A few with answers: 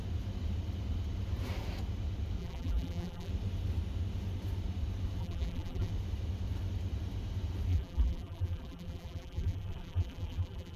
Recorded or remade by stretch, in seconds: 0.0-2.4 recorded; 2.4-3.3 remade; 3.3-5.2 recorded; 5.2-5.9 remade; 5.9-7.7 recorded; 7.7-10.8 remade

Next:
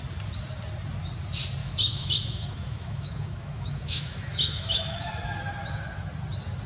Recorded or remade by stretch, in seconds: 0.0-1.6 recorded; 1.6-5.1 remade; 5.1-6.7 recorded